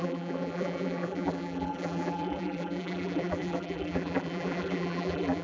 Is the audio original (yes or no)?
no